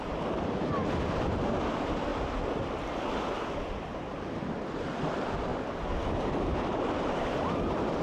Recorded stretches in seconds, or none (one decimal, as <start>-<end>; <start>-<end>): 2.1-3.2; 5.5-6.9